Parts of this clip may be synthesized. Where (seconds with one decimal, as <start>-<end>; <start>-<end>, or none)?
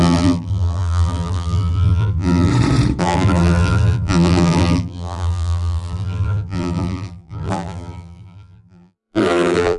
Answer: 0.0-2.5; 3.0-9.8